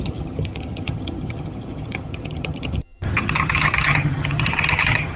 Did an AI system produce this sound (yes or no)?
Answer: yes